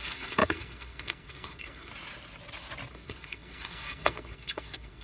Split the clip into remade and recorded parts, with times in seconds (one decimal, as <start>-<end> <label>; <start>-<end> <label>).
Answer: 0.0-1.9 remade; 1.9-2.9 recorded; 2.9-5.0 remade